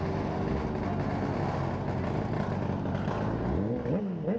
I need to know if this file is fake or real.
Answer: real